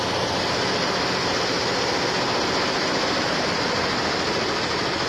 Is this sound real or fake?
real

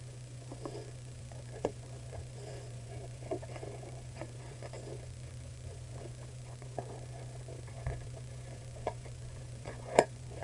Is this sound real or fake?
fake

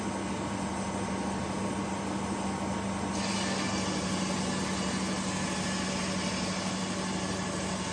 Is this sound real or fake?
real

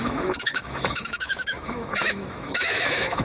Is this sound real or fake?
fake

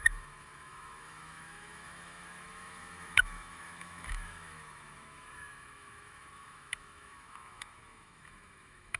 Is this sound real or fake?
fake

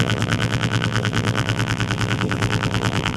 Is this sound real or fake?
fake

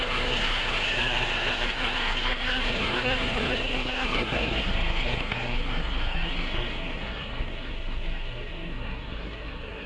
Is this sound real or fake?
fake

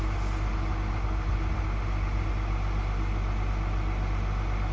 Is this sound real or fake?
real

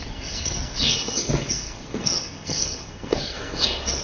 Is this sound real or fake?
fake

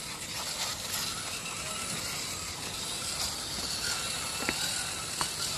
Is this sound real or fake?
real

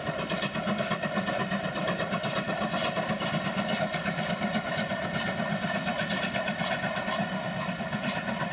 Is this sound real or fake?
real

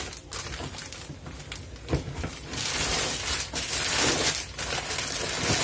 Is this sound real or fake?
real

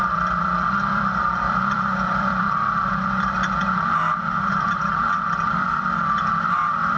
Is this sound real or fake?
fake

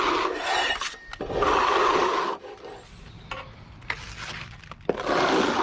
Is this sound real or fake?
real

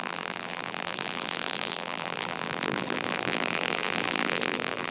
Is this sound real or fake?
fake